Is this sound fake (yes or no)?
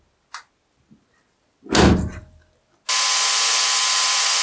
no